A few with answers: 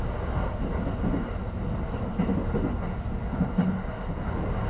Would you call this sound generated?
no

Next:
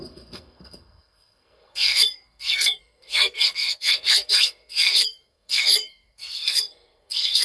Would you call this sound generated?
yes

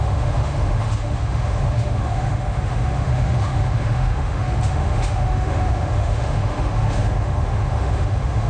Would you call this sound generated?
yes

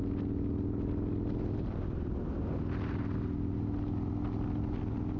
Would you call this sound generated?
no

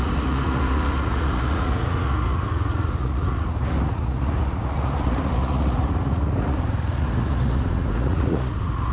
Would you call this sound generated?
yes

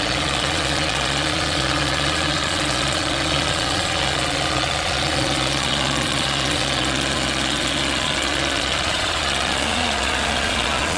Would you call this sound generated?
yes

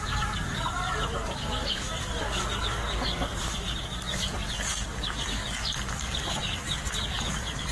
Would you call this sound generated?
yes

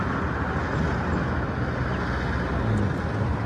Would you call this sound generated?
no